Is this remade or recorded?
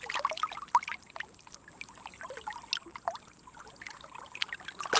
recorded